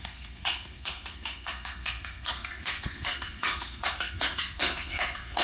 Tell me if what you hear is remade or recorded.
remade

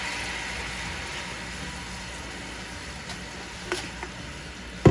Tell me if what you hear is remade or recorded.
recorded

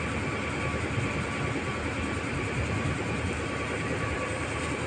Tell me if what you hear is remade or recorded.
recorded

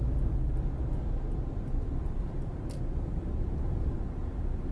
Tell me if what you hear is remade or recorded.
recorded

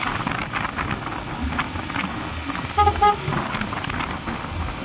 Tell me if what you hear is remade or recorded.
recorded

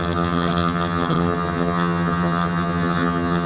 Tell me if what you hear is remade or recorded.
remade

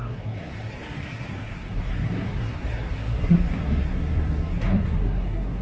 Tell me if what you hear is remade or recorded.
remade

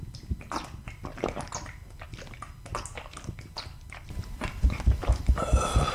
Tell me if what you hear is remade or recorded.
recorded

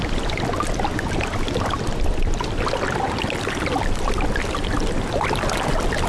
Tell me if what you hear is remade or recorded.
recorded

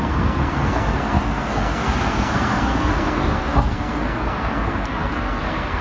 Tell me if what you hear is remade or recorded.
remade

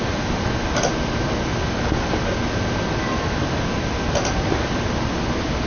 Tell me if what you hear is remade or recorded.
recorded